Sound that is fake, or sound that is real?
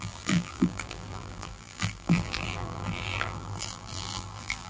fake